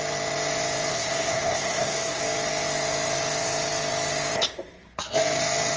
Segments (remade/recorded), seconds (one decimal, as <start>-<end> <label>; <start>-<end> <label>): 0.0-0.9 recorded; 0.9-2.2 remade; 2.2-5.8 recorded